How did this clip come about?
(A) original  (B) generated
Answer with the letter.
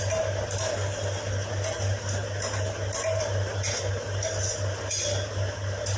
A